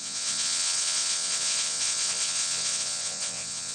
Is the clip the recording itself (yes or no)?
no